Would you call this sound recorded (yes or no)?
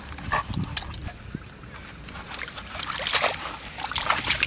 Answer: yes